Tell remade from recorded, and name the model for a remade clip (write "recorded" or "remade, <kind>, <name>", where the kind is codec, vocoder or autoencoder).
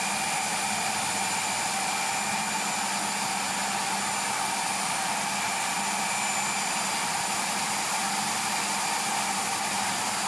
recorded